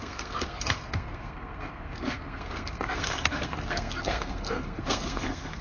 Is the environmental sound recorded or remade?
remade